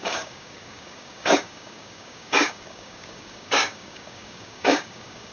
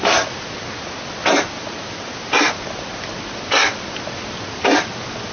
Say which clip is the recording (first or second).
second